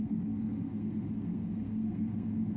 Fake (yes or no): yes